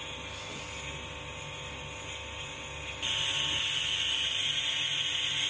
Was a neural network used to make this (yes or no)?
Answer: no